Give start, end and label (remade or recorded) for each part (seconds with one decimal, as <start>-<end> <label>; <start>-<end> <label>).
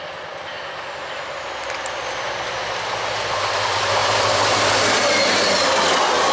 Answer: 0.0-6.3 recorded